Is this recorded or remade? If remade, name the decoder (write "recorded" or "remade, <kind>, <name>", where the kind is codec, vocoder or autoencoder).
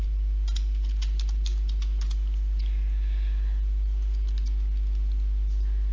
recorded